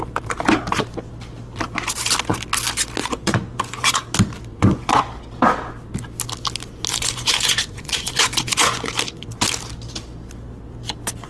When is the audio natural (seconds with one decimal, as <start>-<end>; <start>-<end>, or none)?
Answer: 0.0-3.0; 4.0-4.5; 5.1-6.9; 8.9-11.3